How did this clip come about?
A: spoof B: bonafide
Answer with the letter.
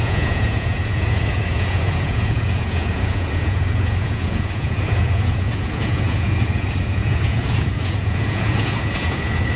A